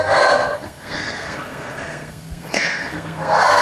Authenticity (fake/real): fake